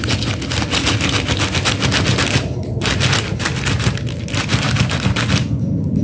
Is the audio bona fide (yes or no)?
yes